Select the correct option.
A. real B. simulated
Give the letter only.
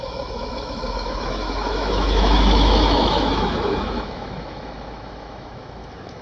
B